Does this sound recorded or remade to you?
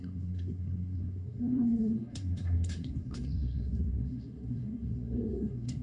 remade